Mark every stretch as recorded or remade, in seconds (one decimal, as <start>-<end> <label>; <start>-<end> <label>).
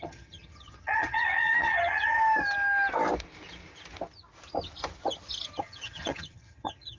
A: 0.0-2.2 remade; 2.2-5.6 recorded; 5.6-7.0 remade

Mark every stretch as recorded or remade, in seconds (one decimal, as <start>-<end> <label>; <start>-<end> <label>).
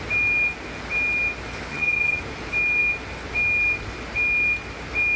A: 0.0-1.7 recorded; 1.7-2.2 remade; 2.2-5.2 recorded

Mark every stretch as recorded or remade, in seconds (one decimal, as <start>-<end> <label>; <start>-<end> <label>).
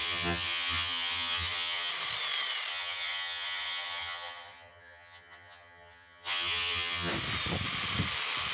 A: 0.0-1.9 remade; 1.9-2.7 recorded; 2.7-7.1 remade; 7.1-8.5 recorded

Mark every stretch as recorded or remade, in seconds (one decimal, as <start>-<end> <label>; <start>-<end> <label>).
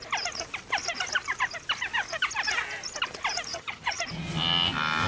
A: 0.0-3.5 recorded; 3.5-4.0 remade; 4.0-5.1 recorded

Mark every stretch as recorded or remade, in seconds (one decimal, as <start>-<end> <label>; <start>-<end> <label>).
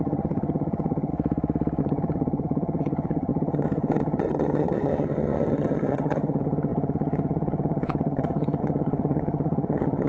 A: 0.0-1.1 remade; 1.1-1.8 recorded; 1.8-10.1 remade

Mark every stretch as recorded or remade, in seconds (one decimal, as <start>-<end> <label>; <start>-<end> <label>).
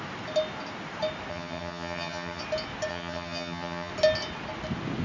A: 0.0-1.3 recorded; 1.3-2.4 remade; 2.4-2.9 recorded; 2.9-3.9 remade; 3.9-5.0 recorded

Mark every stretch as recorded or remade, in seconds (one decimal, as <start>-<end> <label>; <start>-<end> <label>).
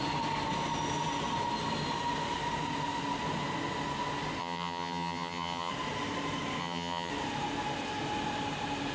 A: 0.0-4.4 recorded; 4.4-5.7 remade; 5.7-6.6 recorded; 6.6-7.1 remade; 7.1-8.9 recorded